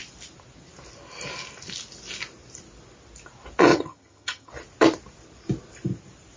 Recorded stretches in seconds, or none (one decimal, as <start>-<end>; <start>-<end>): 0.0-3.7; 4.5-6.4